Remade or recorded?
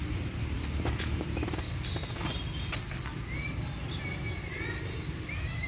recorded